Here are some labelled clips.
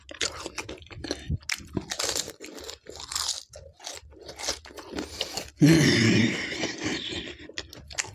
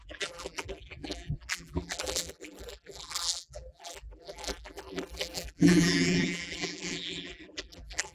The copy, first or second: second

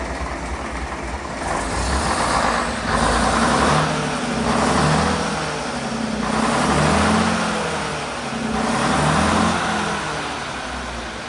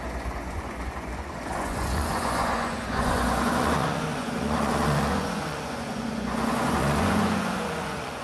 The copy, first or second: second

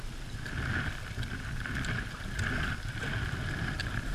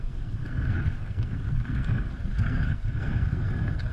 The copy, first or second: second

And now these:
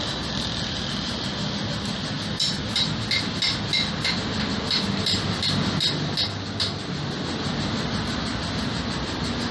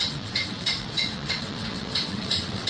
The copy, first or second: second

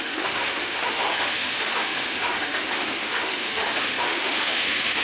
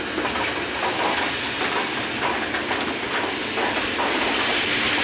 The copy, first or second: first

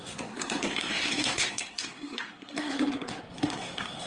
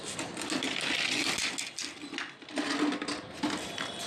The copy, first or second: first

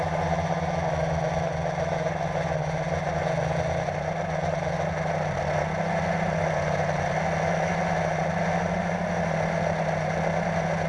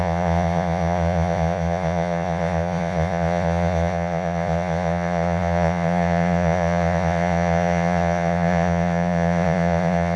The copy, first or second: second